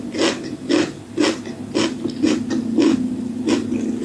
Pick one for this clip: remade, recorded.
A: recorded